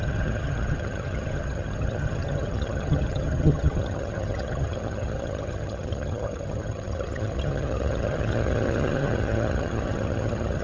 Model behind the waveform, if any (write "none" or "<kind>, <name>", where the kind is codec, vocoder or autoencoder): vocoder, HiFi-GAN